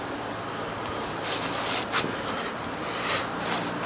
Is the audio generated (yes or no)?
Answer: no